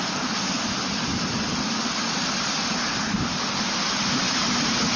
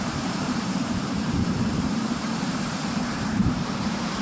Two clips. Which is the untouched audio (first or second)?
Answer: first